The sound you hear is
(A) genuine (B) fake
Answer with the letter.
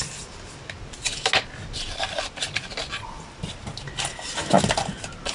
A